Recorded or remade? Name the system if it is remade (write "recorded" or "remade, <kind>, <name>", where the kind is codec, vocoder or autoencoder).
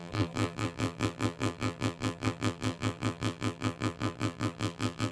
remade, vocoder, BigVGAN v2